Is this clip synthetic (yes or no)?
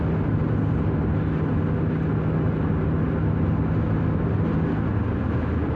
no